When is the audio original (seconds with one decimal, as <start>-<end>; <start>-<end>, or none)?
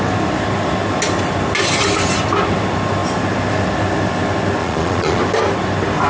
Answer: 0.0-4.6; 5.2-6.1